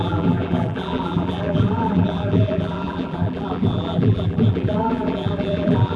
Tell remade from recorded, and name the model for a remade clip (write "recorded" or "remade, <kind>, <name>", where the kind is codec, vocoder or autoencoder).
remade, vocoder, BigVGAN v2